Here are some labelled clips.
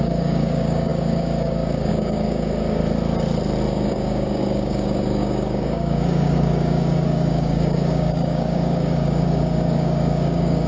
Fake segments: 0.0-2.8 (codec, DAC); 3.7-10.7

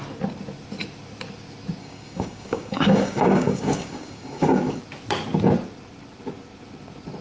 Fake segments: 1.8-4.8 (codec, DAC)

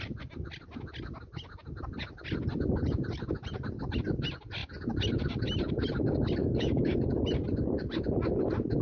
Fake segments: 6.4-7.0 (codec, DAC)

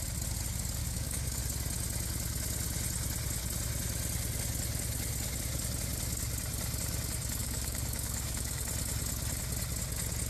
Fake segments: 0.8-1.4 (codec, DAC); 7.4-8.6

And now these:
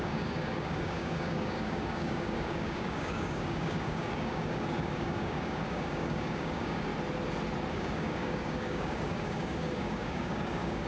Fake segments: 0.0-6.9 (codec, DAC); 7.7-10.9